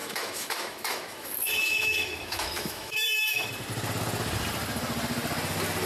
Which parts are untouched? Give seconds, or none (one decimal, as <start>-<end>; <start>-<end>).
3.5-5.9